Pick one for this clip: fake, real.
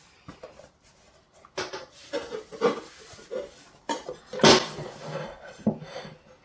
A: real